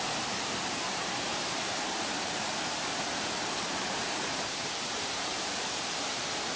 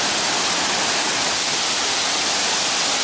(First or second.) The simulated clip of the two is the first